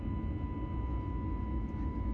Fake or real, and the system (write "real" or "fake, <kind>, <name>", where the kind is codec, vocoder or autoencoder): real